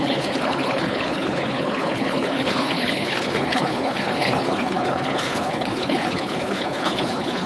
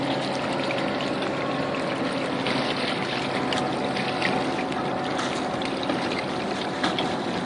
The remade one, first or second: first